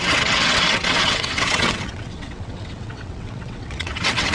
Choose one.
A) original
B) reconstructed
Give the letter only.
B